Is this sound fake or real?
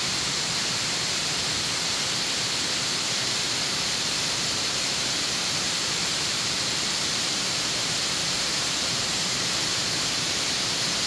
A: fake